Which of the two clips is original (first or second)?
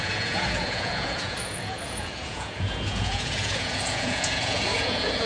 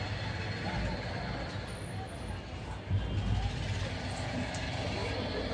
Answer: second